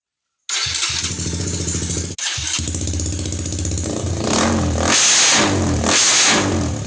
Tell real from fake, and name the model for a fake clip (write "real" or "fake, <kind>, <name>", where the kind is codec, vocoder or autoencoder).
real